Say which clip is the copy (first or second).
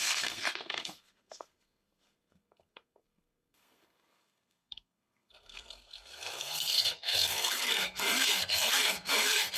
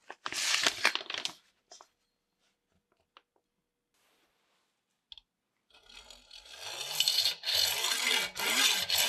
first